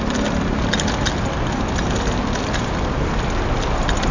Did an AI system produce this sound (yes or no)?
no